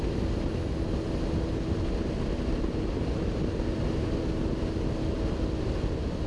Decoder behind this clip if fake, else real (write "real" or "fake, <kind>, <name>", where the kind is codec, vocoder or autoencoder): real